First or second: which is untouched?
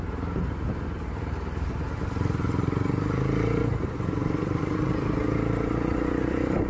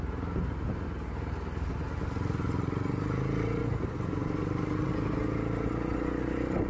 second